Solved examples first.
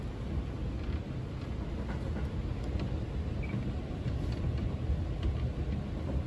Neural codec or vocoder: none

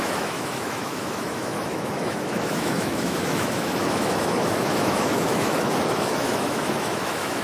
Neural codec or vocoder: autoencoder, DAC-VAE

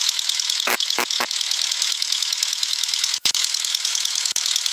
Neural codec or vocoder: autoencoder, DAC-VAE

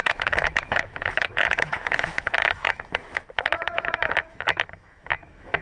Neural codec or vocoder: autoencoder, DAC-VAE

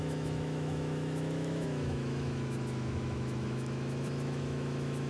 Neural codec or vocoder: autoencoder, DAC-VAE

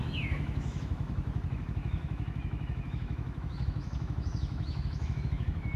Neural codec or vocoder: autoencoder, DAC-VAE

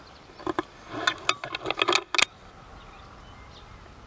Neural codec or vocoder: none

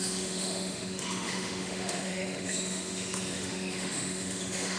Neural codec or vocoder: autoencoder, DAC-VAE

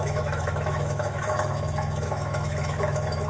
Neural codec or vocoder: autoencoder, DAC-VAE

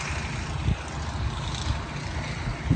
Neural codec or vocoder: none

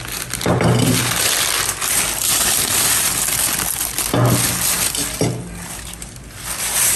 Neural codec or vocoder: none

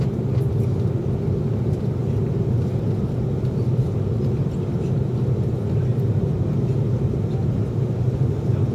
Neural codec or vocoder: none